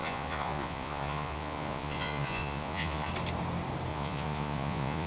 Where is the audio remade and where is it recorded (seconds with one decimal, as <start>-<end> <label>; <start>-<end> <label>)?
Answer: 0.0-3.1 remade; 3.1-3.9 recorded; 3.9-5.1 remade